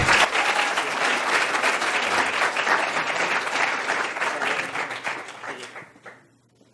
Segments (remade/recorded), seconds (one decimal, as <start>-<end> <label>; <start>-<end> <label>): 0.0-4.0 remade; 4.0-4.4 recorded; 4.4-6.3 remade; 6.3-6.7 recorded